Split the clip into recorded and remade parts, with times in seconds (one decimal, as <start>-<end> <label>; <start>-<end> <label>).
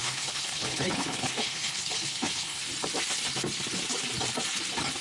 0.0-2.6 remade; 2.6-5.0 recorded